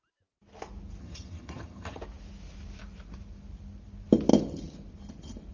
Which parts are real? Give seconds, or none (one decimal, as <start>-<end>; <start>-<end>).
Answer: 0.0-1.0; 2.0-5.5